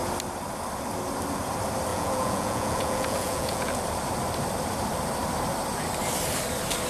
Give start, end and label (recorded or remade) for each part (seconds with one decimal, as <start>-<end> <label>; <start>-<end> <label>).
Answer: 0.0-1.9 recorded; 1.9-3.8 remade; 3.8-6.9 recorded